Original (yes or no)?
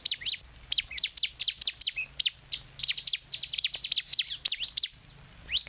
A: yes